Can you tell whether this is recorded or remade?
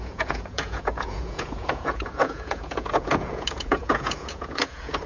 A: remade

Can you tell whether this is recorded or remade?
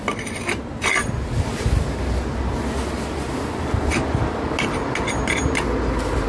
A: recorded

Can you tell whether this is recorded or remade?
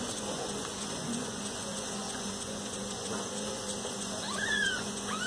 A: remade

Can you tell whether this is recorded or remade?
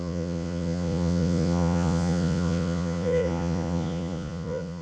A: remade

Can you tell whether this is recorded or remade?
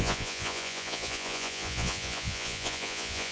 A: remade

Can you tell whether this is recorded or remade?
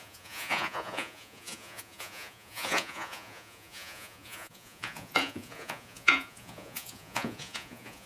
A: remade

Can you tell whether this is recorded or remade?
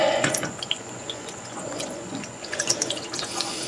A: remade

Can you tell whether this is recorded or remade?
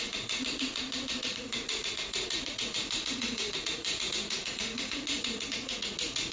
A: remade